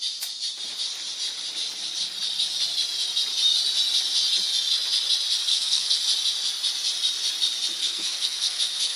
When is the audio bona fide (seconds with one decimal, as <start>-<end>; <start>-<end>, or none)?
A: 0.0-5.5; 6.0-7.8